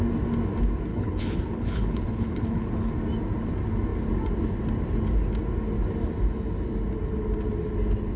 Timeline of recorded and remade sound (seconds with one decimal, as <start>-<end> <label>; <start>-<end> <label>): 0.0-0.9 recorded; 0.9-2.9 remade; 2.9-8.2 recorded